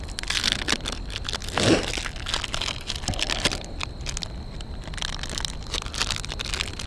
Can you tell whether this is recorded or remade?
recorded